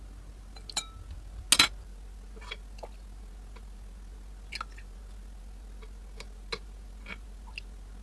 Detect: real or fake real